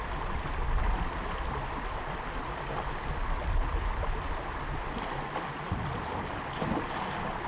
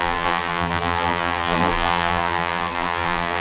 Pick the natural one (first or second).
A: first